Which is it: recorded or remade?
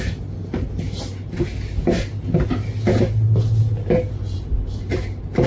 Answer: recorded